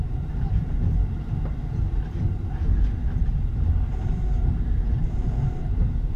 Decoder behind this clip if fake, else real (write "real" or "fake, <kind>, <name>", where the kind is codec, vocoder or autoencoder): fake, vocoder, BigVGAN v2